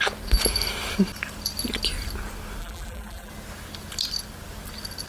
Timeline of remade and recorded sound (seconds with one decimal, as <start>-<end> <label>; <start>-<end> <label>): 0.0-2.6 recorded; 2.6-3.3 remade; 3.3-5.1 recorded